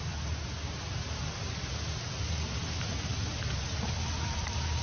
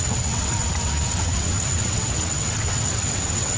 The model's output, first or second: second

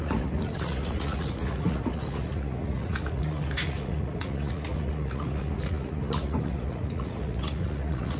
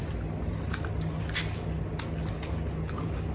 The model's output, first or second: first